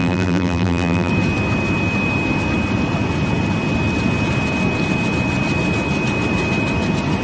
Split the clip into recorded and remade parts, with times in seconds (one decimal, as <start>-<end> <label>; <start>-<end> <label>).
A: 0.0-1.1 remade; 1.1-7.2 recorded